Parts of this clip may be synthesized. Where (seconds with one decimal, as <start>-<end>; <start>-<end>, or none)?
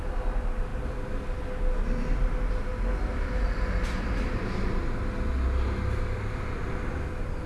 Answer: none